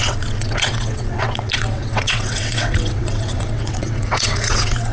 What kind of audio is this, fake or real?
fake